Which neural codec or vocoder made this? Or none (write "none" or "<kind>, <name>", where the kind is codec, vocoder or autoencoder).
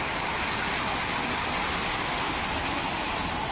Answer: none